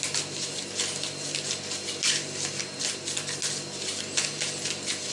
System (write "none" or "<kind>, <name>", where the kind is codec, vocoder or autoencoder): none